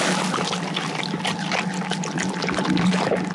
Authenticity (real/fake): real